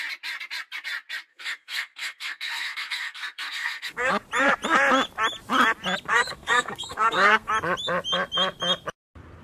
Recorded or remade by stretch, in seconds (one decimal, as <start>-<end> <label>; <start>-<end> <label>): 0.0-1.3 recorded; 1.3-4.1 remade; 4.1-6.1 recorded; 6.1-7.5 remade; 7.5-9.4 recorded